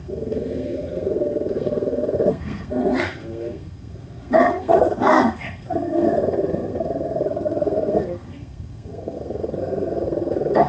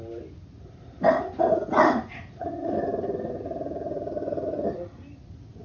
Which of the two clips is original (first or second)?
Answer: second